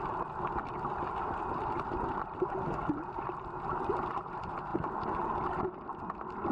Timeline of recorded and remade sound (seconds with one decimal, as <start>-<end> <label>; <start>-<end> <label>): 0.0-6.5 recorded